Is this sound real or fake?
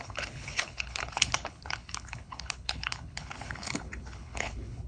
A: fake